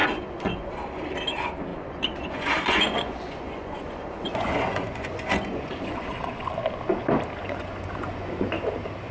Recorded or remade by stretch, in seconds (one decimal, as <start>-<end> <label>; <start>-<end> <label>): 0.0-0.7 remade; 0.7-1.7 recorded; 1.7-6.5 remade; 6.5-7.4 recorded; 7.4-8.5 remade; 8.5-9.1 recorded